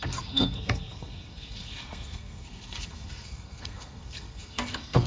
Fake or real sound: fake